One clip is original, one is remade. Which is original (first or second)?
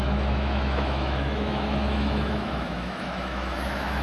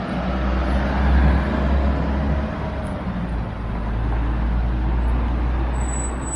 second